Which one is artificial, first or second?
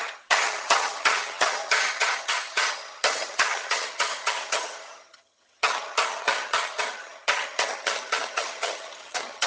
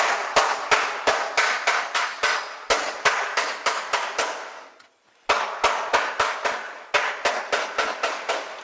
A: first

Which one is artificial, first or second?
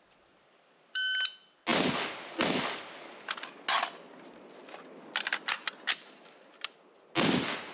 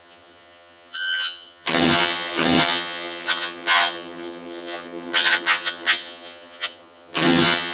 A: second